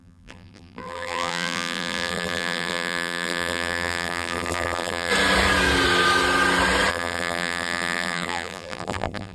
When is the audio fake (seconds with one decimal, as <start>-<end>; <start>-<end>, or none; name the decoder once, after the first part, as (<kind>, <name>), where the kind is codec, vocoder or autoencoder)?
0.0-5.1 (vocoder, BigVGAN v2); 6.9-9.3